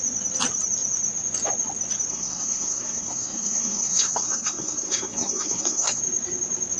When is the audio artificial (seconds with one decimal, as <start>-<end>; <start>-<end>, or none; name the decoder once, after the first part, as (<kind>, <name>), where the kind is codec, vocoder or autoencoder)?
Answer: 2.1-6.0 (codec, SNAC)